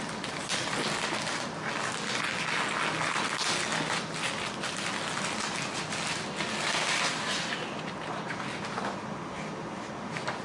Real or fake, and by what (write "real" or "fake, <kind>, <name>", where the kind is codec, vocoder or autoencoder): real